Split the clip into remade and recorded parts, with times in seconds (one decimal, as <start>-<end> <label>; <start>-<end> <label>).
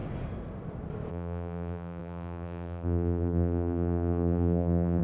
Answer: 0.0-1.1 recorded; 1.1-5.0 remade